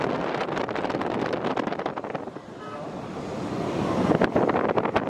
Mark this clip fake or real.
real